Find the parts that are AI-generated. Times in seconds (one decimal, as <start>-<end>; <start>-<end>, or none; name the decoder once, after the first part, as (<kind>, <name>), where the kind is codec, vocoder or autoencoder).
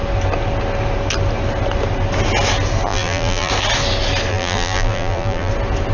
2.9-3.5 (vocoder, BigVGAN v2); 4.3-5.5